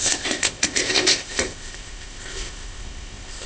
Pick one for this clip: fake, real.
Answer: fake